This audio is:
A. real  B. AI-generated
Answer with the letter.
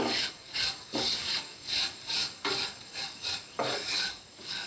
B